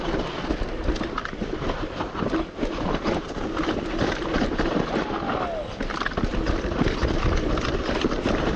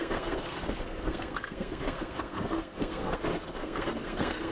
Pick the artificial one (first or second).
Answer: second